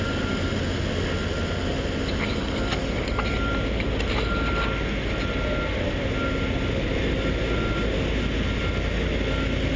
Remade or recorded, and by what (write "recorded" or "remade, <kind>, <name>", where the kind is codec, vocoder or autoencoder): recorded